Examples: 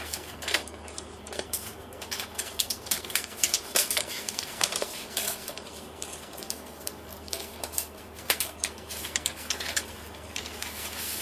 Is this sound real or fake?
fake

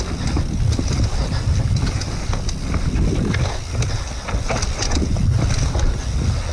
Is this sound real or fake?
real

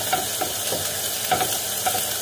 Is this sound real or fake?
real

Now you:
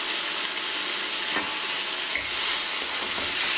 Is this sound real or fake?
real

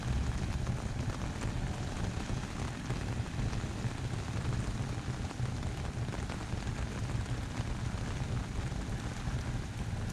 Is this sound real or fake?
real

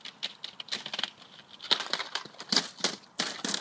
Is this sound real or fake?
real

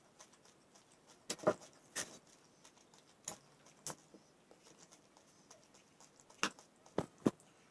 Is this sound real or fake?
real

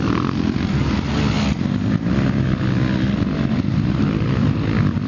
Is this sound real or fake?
real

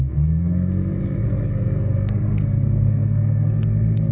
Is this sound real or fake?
fake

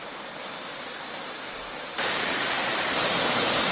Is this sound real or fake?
fake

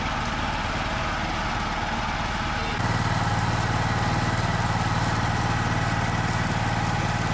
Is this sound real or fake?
real